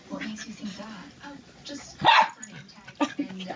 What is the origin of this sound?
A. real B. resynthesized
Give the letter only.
A